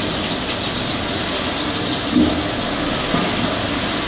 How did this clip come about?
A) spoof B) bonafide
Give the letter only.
B